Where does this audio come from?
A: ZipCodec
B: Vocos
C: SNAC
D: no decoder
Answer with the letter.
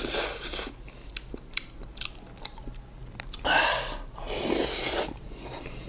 D